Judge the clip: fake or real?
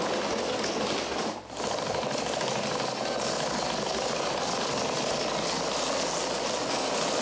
real